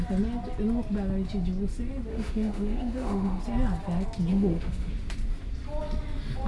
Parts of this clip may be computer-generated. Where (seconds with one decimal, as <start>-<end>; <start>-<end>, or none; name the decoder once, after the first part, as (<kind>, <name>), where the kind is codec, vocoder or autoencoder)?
2.1-3.4 (autoencoder, DAC-VAE); 4.3-4.9

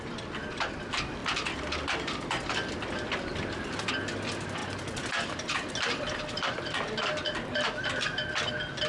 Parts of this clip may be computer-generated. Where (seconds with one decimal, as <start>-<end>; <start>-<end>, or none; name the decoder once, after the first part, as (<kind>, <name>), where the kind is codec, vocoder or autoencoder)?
1.2-3.9 (vocoder, BigVGAN v2)

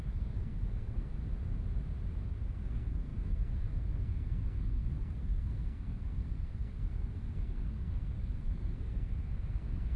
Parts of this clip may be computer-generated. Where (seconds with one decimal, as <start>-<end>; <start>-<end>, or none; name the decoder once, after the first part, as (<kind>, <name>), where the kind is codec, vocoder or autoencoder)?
0.0-1.2 (codec, SNAC); 2.3-10.0

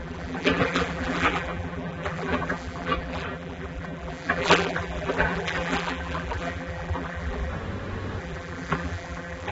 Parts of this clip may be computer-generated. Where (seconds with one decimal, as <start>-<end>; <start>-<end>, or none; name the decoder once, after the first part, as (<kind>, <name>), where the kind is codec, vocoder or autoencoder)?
0.0-7.5 (vocoder, BigVGAN v2); 8.2-9.5

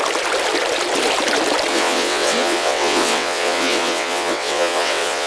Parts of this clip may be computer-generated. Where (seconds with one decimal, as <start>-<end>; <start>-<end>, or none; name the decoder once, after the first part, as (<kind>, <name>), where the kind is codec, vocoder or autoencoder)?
1.7-5.3 (vocoder, WaveNeXt)

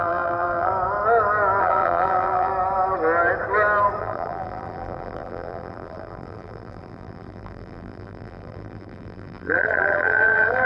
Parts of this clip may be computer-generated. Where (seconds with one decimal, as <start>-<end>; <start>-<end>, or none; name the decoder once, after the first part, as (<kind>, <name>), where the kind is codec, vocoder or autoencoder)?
0.0-0.7 (vocoder, BigVGAN v2); 1.6-2.5; 4.0-10.7